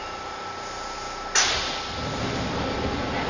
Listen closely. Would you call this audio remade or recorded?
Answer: recorded